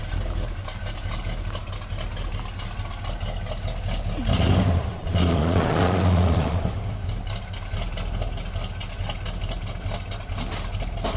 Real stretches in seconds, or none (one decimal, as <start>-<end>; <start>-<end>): 0.0-4.9; 6.6-11.2